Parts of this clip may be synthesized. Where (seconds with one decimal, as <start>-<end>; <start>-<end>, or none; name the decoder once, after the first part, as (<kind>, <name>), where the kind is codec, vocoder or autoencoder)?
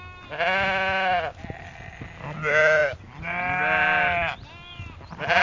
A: none